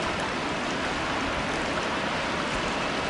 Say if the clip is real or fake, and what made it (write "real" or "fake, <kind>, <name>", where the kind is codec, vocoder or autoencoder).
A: real